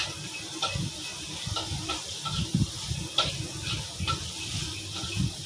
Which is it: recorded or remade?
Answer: recorded